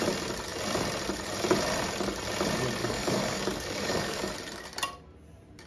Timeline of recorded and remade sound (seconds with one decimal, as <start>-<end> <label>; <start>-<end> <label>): 0.0-2.8 recorded; 2.8-4.3 remade; 4.3-5.7 recorded